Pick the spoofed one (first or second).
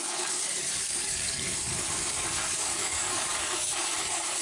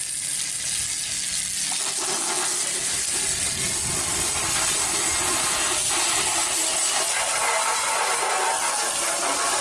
first